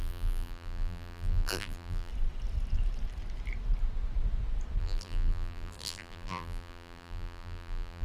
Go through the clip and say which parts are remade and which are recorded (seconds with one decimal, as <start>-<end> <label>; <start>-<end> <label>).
0.0-2.1 remade; 2.1-4.8 recorded; 4.8-8.0 remade